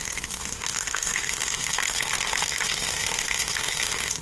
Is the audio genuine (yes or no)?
no